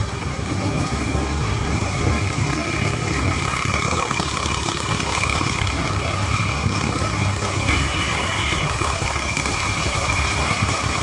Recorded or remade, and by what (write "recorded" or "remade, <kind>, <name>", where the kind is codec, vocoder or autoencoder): remade, codec, SNAC